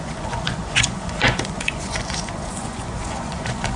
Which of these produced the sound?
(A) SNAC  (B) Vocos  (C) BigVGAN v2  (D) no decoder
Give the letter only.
B